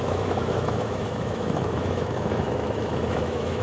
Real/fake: fake